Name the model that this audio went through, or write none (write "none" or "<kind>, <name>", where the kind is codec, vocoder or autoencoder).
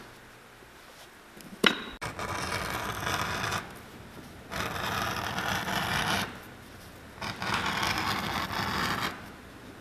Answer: none